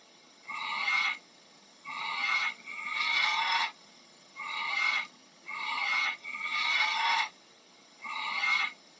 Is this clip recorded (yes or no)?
no